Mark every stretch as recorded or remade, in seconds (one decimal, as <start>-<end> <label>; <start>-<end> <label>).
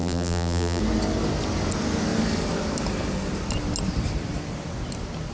0.0-0.8 remade; 0.8-5.3 recorded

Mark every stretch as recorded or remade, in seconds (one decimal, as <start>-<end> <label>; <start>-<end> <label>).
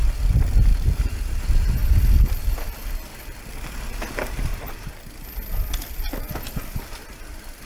0.0-0.7 recorded; 0.7-1.4 remade; 1.4-7.7 recorded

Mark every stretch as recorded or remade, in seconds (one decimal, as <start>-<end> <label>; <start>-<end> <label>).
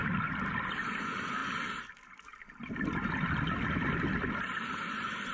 0.0-1.4 recorded; 1.4-4.6 remade; 4.6-5.3 recorded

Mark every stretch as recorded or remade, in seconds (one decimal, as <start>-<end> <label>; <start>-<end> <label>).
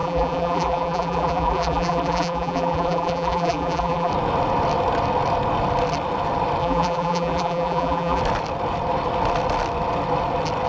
0.0-4.1 remade; 4.1-6.6 recorded; 6.6-8.2 remade; 8.2-10.7 recorded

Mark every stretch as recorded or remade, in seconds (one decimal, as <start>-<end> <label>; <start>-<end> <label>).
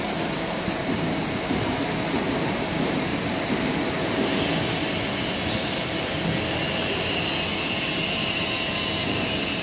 0.0-3.1 remade; 3.1-7.6 recorded; 7.6-9.6 remade